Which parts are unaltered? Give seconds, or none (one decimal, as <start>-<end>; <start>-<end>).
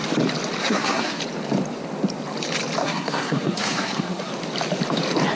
0.0-0.6; 1.2-2.8; 4.3-5.4